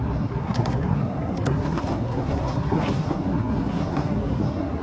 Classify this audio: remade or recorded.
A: remade